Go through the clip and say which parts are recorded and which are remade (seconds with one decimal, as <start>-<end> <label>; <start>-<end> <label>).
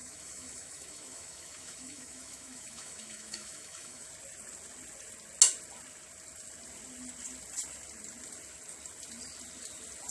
0.0-4.1 remade; 4.1-10.1 recorded